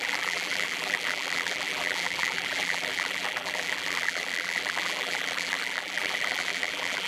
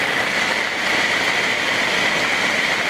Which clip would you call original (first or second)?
second